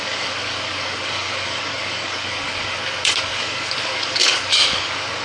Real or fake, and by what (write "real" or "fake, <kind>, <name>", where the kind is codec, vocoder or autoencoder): fake, codec, DAC